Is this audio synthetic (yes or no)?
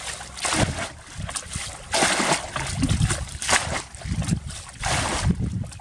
no